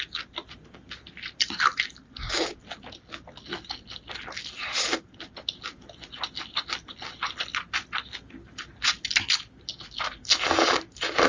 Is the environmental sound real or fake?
real